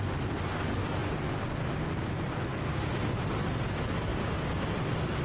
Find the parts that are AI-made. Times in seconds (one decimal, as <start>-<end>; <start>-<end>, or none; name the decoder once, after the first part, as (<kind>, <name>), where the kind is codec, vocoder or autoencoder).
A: 2.7-3.3 (codec, DAC); 4.1-4.7